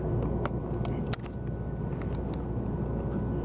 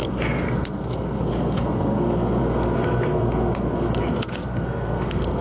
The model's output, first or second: second